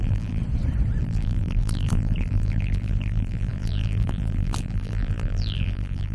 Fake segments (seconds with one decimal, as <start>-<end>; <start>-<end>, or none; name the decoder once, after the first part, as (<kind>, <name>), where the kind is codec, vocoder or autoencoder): 0.0-0.4 (vocoder, BigVGAN v2); 1.0-6.1

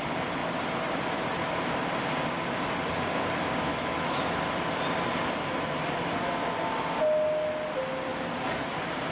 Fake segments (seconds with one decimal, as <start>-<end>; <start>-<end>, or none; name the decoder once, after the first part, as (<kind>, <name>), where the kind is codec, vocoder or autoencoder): 3.7-4.4 (autoencoder, DAC-VAE)

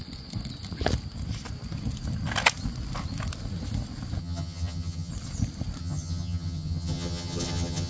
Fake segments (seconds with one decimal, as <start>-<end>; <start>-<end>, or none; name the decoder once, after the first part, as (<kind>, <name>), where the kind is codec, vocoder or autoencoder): 4.2-5.1 (vocoder, HiFi-GAN); 5.8-7.9

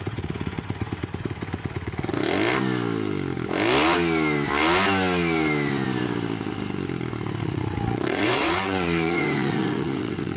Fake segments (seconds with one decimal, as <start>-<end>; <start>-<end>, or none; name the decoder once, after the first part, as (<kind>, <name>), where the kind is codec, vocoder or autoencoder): 0.0-2.1 (vocoder, WaveNeXt); 7.4-10.4

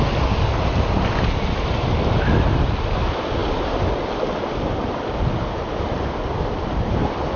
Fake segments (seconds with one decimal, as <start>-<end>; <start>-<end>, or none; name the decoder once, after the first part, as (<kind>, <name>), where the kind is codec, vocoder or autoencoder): none

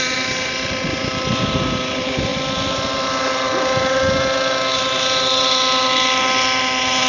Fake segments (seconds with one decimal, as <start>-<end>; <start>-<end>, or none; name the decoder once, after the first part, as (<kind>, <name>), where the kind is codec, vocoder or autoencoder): none